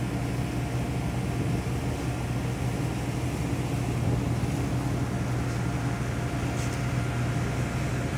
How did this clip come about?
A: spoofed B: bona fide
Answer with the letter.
B